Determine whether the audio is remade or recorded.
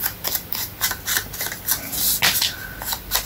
recorded